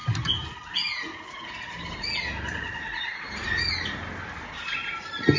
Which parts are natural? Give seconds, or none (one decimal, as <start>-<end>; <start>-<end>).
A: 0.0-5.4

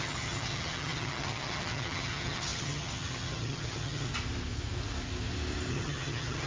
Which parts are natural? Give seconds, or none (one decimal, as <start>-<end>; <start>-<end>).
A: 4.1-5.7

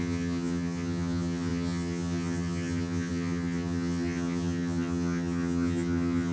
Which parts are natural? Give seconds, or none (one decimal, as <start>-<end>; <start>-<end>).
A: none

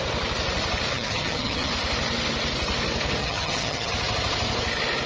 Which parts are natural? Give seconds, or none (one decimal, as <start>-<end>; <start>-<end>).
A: 0.0-0.9; 1.7-3.2; 3.9-5.1

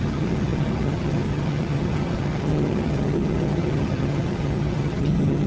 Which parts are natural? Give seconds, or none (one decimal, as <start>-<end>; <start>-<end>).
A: none

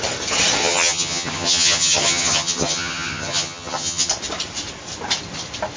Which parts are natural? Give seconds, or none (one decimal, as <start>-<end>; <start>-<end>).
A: 0.0-0.6; 4.1-5.8

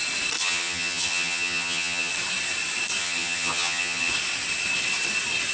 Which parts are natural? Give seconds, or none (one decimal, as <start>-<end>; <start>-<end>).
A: 0.0-0.4; 2.1-3.0; 4.1-5.5

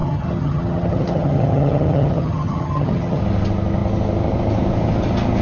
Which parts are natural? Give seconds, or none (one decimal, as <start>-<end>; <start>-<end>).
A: 3.2-5.4